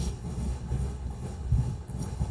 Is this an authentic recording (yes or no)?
no